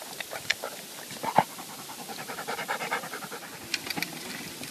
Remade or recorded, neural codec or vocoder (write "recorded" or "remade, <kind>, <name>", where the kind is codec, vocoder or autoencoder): recorded